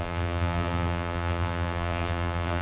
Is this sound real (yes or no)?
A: no